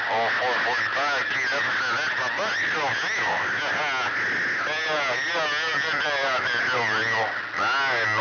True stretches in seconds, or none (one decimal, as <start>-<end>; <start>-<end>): 0.0-5.7; 7.4-8.2